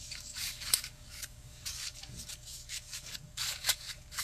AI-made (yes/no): yes